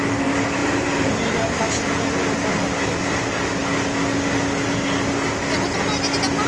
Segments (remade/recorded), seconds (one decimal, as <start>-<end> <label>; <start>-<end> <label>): 0.0-6.5 recorded